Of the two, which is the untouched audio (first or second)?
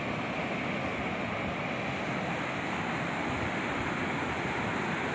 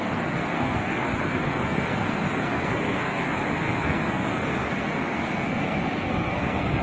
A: first